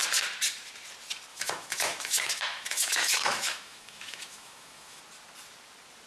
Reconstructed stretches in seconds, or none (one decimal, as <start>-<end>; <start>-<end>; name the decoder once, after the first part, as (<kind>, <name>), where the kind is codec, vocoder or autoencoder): 1.3-5.0 (autoencoder, DAC-VAE)